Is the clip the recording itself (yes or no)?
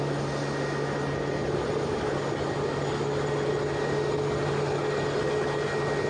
yes